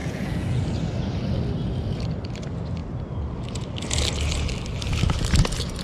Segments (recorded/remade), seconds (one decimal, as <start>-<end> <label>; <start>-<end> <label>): 0.0-0.6 remade; 0.6-5.8 recorded